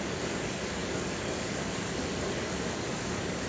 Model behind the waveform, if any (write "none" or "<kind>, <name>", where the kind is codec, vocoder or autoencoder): codec, DAC